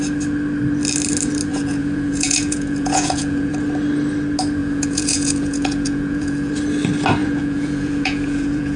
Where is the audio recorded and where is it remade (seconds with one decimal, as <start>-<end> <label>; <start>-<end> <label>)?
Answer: 0.0-1.5 recorded; 1.5-3.5 remade; 3.5-4.6 recorded; 4.6-6.5 remade; 6.5-7.2 recorded; 7.2-8.8 remade